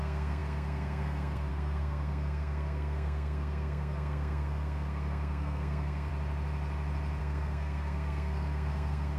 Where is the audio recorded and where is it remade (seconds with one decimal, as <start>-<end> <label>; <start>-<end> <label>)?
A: 0.0-6.1 remade; 6.1-7.2 recorded; 7.2-9.2 remade